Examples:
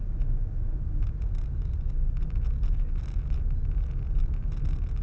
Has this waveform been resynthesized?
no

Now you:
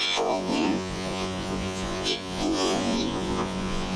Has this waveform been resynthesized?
yes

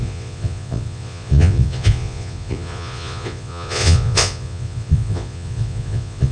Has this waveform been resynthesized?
yes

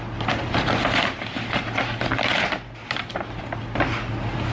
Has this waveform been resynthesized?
no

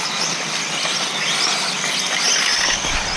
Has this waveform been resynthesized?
no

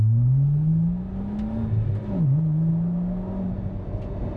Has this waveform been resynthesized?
no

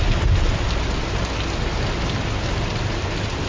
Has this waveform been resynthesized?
no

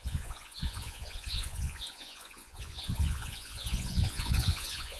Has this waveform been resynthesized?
yes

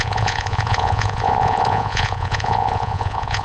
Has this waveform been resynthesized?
yes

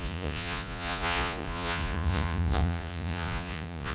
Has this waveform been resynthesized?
yes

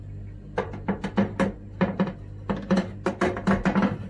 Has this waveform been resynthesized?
no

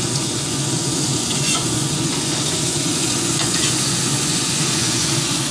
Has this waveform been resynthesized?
yes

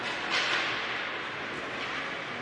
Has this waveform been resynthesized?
no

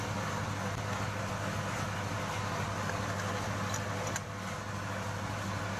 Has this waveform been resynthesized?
no